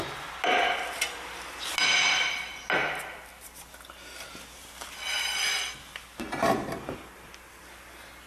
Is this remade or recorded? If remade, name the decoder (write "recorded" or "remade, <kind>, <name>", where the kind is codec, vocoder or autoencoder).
recorded